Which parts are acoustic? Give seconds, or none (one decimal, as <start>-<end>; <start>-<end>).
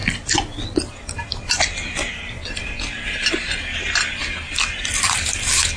0.0-5.8